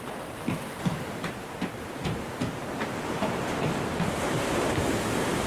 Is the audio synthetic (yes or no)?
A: yes